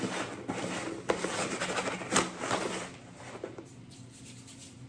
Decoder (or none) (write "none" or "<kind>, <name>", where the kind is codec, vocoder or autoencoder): none